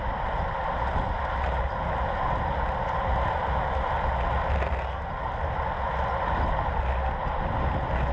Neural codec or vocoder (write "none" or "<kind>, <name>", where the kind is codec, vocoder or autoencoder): none